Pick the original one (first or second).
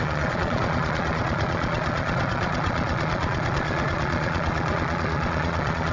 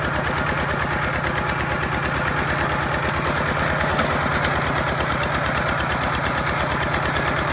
second